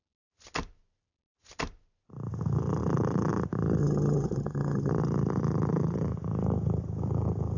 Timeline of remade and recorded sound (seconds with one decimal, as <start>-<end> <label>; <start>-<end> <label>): 0.0-3.8 recorded; 3.8-4.9 remade; 4.9-7.6 recorded